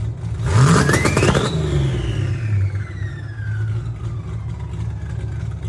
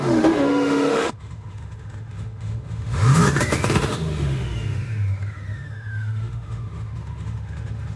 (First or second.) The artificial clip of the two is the second